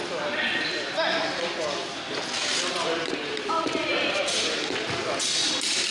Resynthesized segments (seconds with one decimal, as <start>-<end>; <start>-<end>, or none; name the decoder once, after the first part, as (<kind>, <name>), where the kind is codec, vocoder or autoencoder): 2.5-3.9 (vocoder, BigVGAN v2)